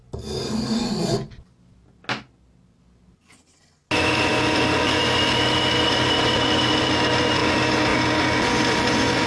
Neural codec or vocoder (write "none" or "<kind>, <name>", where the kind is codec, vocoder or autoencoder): none